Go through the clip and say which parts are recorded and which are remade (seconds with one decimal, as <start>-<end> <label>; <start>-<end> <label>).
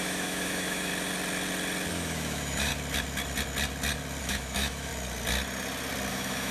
0.0-0.9 remade; 0.9-1.9 recorded; 1.9-2.7 remade; 2.7-4.2 recorded; 4.2-4.9 remade; 4.9-6.1 recorded; 6.1-6.5 remade